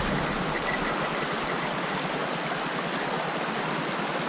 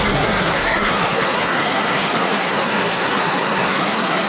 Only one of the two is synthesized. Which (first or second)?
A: second